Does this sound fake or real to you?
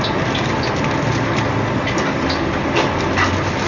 real